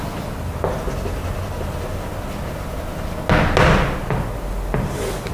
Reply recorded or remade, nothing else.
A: recorded